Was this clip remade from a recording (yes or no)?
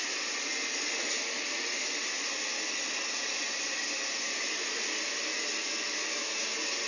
no